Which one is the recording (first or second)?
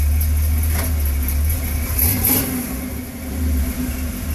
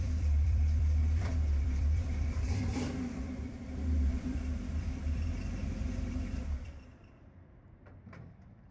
first